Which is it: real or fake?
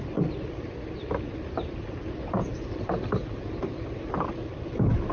real